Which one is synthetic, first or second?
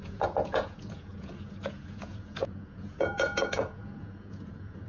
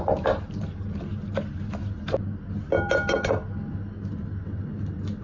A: first